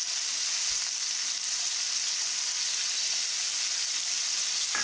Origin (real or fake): real